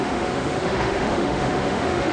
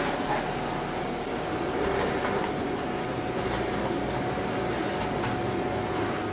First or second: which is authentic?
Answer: second